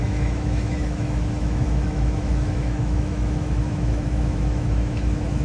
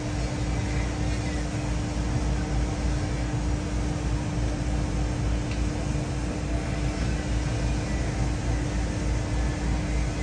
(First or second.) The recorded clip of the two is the second